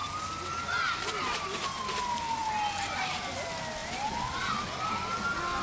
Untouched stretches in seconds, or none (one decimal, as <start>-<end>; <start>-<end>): 0.0-5.6